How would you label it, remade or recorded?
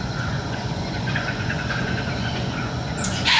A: remade